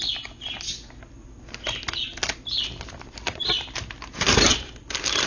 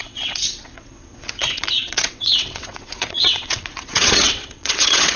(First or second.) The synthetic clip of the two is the second